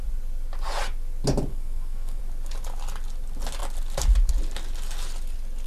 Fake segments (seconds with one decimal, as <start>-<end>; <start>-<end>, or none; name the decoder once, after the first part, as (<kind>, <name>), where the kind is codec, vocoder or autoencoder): 1.5-2.2 (codec, SNAC)